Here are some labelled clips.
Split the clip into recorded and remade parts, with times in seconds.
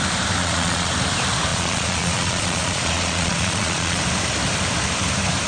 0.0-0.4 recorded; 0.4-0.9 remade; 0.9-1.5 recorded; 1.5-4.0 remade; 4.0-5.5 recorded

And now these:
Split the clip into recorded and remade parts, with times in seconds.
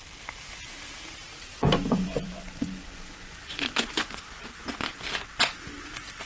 0.0-1.5 recorded; 1.5-5.3 remade; 5.3-6.3 recorded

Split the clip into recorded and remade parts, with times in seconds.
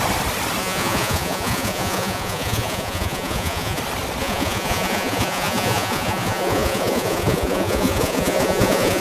0.0-0.6 recorded; 0.6-3.8 remade; 3.8-4.2 recorded; 4.2-9.0 remade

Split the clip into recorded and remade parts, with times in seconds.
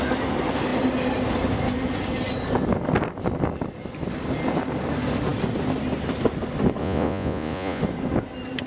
0.0-6.8 recorded; 6.8-7.8 remade; 7.8-8.7 recorded